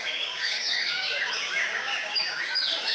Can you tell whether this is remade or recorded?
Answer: remade